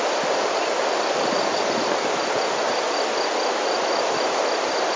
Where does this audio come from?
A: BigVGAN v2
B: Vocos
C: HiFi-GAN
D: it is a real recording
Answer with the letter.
D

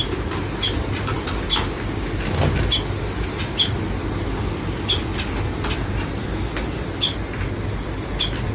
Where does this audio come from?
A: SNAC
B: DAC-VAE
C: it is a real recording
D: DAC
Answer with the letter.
C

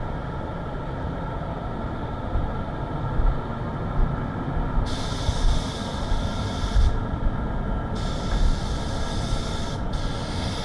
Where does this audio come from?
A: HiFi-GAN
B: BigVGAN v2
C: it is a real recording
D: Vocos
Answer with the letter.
C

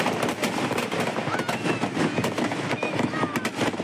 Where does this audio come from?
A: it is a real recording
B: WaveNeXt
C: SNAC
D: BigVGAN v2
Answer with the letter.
A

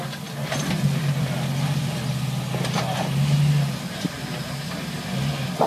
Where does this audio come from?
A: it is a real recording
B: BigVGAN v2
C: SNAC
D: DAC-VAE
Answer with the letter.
A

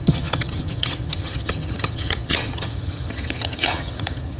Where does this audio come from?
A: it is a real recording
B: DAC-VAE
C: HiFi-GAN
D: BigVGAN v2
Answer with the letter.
C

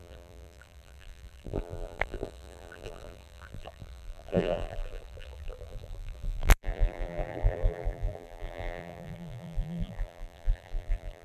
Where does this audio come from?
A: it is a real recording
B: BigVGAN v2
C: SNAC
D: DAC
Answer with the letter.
B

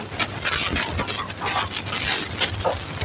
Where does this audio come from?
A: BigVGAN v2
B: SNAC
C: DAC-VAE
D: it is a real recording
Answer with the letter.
D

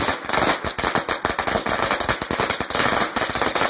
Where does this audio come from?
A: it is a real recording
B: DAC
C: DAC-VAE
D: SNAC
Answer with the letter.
A